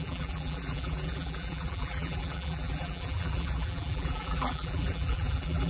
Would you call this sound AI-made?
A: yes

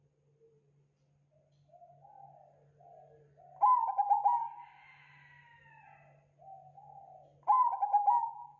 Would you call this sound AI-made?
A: no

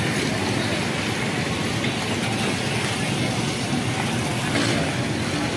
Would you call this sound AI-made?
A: no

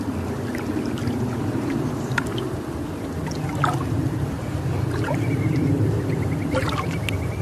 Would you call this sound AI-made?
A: yes